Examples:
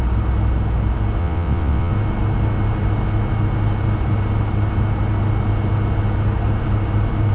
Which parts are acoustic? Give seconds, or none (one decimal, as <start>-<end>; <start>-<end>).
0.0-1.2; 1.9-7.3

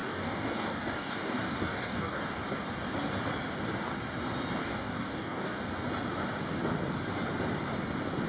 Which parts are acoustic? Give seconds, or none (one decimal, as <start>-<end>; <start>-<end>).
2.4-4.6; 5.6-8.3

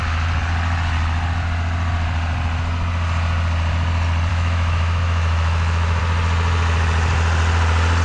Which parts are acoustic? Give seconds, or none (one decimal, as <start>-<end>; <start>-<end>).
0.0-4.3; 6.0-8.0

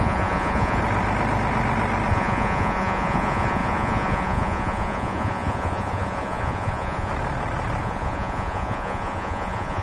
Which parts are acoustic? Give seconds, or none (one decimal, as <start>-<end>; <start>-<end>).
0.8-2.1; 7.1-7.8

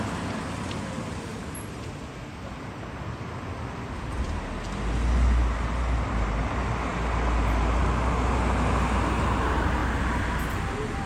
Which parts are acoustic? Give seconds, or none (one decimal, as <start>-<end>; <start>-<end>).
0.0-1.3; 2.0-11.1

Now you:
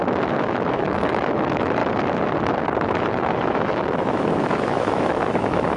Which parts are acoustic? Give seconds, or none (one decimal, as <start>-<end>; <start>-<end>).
1.8-2.9

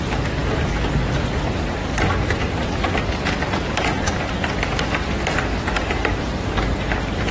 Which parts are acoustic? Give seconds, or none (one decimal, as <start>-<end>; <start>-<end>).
0.0-1.8; 6.2-7.3

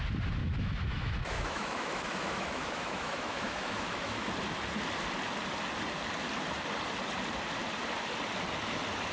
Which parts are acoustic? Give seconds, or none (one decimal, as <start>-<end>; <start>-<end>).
0.0-0.4; 4.3-9.1